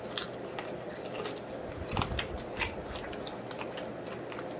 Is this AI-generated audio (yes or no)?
no